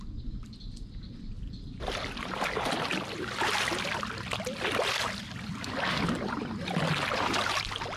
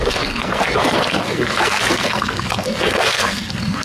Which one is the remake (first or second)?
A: second